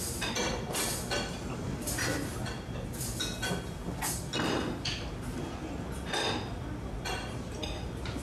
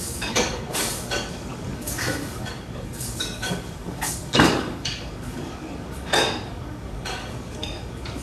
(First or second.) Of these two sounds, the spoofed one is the second